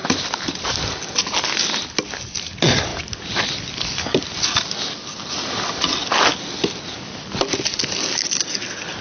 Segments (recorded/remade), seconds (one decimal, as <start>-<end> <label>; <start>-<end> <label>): 0.0-9.0 recorded